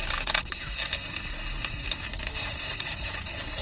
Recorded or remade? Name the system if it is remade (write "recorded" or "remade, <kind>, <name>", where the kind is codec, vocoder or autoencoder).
recorded